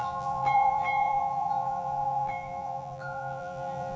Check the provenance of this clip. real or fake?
fake